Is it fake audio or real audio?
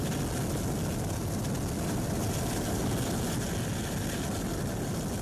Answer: real